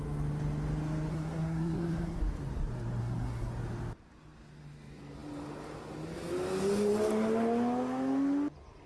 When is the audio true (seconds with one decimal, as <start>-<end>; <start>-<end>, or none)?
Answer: 0.0-1.1; 2.2-3.0; 3.5-8.9